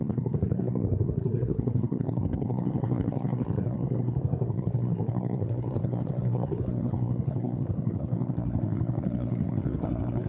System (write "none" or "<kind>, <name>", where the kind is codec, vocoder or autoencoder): codec, SNAC